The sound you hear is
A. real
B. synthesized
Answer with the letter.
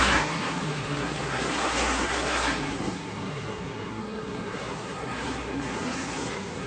B